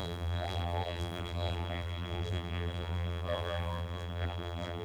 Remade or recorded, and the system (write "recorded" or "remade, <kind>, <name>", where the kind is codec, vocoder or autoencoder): remade, vocoder, BigVGAN v2